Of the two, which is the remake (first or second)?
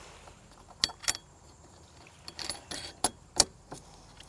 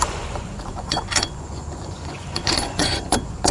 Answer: second